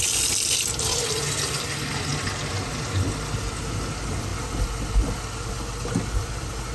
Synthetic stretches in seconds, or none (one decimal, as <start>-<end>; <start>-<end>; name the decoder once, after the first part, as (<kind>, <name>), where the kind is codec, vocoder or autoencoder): none